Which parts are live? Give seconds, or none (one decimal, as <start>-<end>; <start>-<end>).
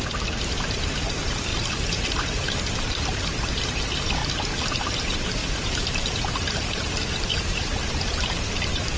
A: 1.5-2.2; 4.2-4.7